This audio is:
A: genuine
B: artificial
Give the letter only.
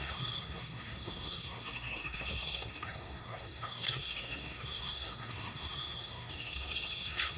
B